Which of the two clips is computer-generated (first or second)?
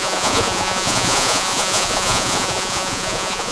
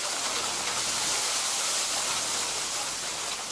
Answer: first